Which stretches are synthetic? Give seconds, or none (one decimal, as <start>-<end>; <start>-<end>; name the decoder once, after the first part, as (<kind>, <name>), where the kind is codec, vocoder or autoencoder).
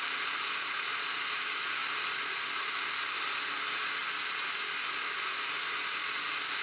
none